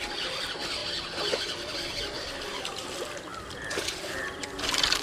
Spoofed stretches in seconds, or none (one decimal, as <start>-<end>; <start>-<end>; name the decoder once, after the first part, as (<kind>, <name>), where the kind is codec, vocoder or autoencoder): none